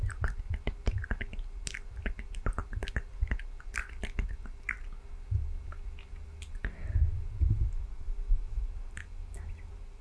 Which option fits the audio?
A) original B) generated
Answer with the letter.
A